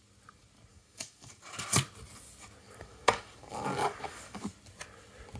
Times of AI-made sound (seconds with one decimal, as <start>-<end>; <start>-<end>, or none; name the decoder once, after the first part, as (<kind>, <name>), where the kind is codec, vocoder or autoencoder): 0.7-1.4 (codec, DAC); 2.6-4.4

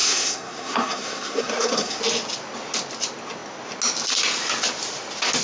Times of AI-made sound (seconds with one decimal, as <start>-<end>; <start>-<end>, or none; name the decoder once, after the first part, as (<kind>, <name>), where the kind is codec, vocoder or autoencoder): 0.0-2.0 (codec, SNAC)